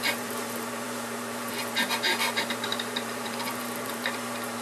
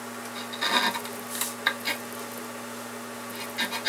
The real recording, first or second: second